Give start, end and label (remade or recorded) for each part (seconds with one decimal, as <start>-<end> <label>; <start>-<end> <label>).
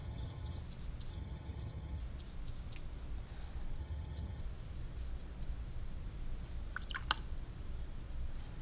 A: 0.0-0.6 remade; 0.6-1.1 recorded; 1.1-2.0 remade; 2.0-3.8 recorded; 3.8-4.4 remade; 4.4-8.6 recorded